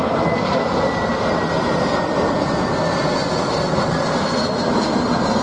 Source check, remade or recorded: recorded